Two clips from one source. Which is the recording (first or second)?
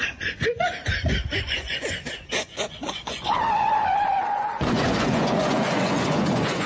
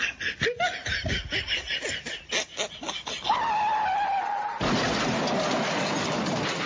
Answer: second